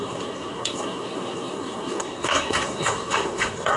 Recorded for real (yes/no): no